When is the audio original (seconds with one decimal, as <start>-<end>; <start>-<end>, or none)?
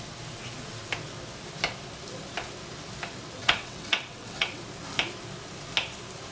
0.0-3.4; 4.6-6.3